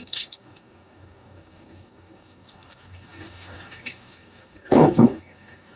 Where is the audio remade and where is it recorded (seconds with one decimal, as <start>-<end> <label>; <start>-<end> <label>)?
0.0-5.8 remade